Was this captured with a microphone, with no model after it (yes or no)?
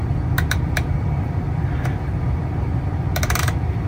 yes